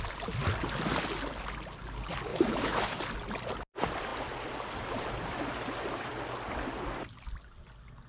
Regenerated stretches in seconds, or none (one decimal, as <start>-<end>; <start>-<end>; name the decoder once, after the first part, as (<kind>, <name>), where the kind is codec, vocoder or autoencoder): 2.3-3.0 (autoencoder, DAC-VAE)